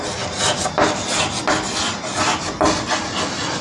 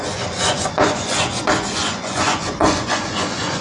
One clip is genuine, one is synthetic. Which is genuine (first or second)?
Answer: first